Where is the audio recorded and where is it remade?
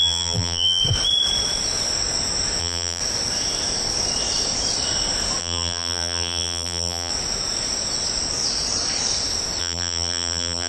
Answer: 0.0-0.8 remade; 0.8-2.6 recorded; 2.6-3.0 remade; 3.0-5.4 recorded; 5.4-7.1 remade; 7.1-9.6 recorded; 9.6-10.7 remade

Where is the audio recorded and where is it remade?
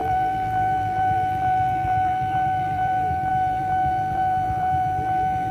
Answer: 0.0-5.5 remade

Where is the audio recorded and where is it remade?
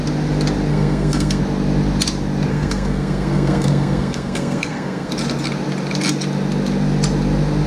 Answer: 0.0-0.7 recorded; 0.7-1.4 remade; 1.4-2.5 recorded; 2.5-5.1 remade; 5.1-7.7 recorded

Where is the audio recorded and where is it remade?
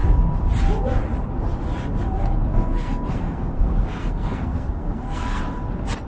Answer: 0.0-2.5 recorded; 2.5-5.4 remade; 5.4-6.1 recorded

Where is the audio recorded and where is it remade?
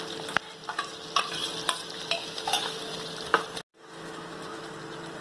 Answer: 0.0-2.2 recorded; 2.2-2.9 remade; 2.9-3.7 recorded; 3.7-4.6 remade; 4.6-5.2 recorded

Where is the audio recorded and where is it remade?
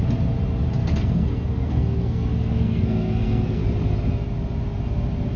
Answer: 0.0-0.8 recorded; 0.8-3.6 remade; 3.6-5.4 recorded